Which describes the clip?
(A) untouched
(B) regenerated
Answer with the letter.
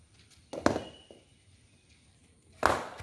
A